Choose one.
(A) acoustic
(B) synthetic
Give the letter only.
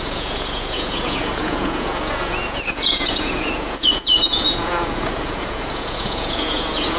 B